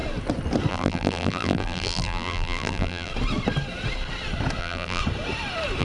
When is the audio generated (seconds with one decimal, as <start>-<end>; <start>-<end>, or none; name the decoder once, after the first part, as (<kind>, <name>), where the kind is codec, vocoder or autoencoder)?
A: 0.7-3.1 (vocoder, BigVGAN v2); 4.6-5.0